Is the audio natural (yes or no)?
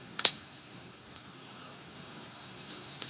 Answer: no